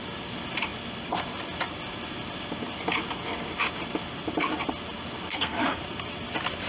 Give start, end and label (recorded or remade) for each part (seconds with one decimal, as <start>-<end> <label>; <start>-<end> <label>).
0.0-5.3 recorded; 5.3-5.8 remade; 5.8-6.7 recorded